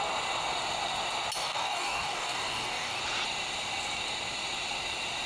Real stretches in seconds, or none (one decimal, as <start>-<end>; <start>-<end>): 0.0-1.4; 3.0-5.3